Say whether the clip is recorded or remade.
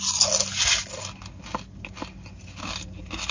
recorded